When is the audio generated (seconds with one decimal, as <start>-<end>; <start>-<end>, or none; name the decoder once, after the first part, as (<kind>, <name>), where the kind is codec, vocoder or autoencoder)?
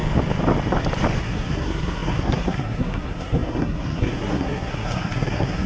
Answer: 1.2-5.7 (codec, SNAC)